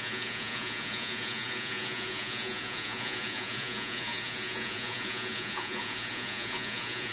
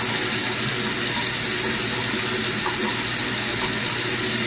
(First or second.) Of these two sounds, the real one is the second